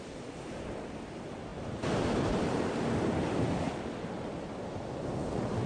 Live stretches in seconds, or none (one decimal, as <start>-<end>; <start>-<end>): 0.0-5.7